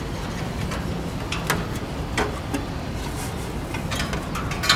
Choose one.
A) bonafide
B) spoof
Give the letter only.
A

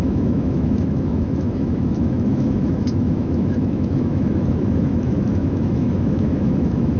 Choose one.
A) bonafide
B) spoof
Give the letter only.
B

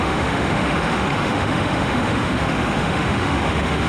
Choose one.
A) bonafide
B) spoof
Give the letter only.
B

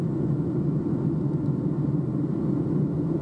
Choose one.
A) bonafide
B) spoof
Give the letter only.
A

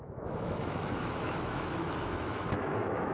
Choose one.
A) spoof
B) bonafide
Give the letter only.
A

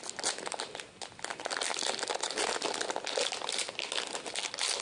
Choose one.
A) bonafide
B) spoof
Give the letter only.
A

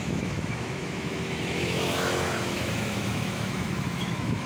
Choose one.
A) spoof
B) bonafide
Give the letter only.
A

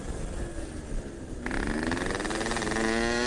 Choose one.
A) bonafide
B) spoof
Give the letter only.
A